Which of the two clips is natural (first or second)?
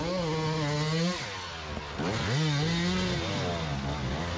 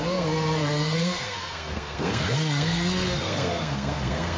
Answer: first